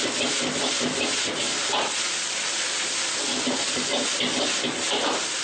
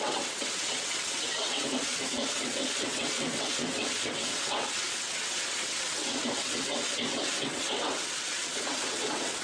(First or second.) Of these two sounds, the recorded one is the first